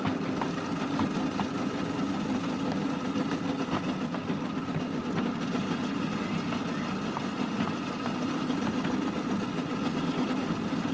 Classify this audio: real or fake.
real